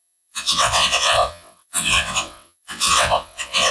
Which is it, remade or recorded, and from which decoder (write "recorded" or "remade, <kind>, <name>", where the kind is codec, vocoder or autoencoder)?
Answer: remade, vocoder, WaveNeXt